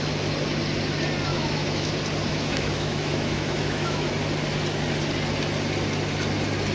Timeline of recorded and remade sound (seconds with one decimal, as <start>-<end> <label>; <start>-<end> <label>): 0.0-1.3 recorded; 1.3-1.9 remade; 1.9-2.3 recorded; 2.3-4.1 remade; 4.1-6.7 recorded